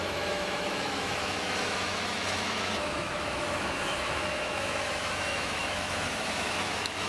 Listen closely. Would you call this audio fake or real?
fake